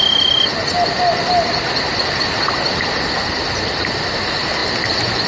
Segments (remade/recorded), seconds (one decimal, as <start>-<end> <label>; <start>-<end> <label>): 0.0-5.3 recorded